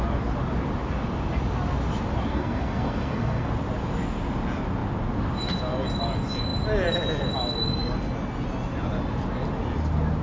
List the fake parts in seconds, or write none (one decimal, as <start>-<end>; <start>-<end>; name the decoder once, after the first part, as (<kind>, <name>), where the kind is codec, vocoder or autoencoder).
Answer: 2.3-3.5 (codec, SNAC)